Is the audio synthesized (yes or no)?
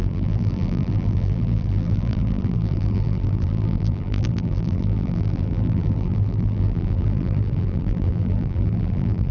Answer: yes